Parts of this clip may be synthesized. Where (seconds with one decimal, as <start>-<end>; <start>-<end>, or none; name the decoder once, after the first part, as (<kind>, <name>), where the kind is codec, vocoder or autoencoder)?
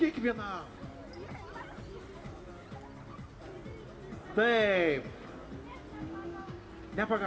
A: 5.9-6.7 (codec, DAC)